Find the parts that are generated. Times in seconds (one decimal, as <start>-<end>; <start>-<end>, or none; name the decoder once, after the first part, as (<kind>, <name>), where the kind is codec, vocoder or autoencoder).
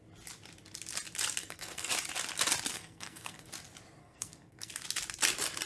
1.4-1.9 (codec, SNAC); 2.7-3.5; 4.0-4.7